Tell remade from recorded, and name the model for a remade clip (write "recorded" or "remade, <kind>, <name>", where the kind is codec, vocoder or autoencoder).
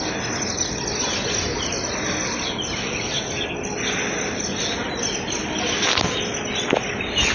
recorded